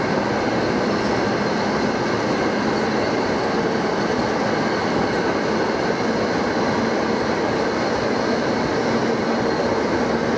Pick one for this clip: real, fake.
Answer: real